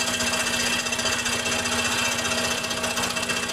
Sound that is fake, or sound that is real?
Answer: real